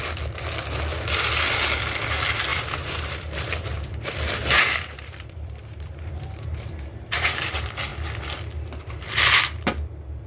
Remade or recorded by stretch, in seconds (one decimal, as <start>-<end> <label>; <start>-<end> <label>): 0.0-2.5 recorded; 2.5-7.5 remade; 7.5-10.3 recorded